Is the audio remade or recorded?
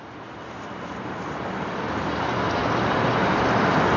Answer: recorded